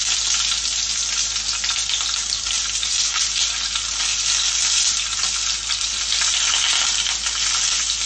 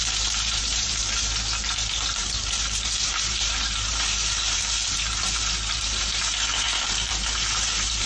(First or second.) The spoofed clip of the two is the second